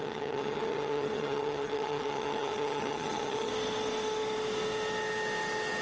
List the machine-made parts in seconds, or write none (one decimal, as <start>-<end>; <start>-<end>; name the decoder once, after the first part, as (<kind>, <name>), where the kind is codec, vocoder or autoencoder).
0.0-3.5 (vocoder, HiFi-GAN)